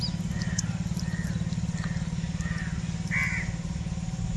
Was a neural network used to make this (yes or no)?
no